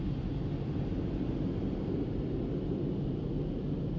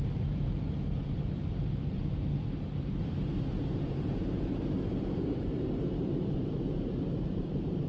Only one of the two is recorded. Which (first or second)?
first